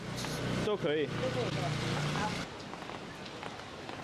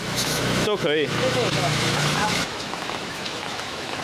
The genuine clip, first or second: first